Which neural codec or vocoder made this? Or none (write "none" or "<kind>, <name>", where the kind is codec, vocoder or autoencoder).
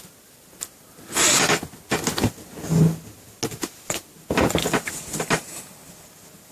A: none